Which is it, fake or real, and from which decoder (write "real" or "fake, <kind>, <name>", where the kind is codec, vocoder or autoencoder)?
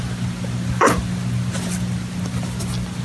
real